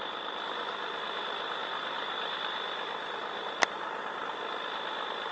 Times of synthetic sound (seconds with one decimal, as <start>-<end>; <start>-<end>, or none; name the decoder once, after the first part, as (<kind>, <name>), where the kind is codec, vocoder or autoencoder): none